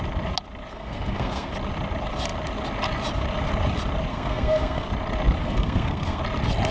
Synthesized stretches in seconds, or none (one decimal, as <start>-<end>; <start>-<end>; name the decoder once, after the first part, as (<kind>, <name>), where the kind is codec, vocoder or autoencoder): 0.7-1.5 (codec, SNAC); 4.1-4.9; 5.4-6.2